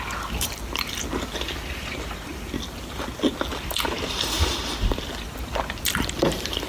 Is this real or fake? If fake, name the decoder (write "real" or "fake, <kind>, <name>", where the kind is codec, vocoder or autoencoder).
real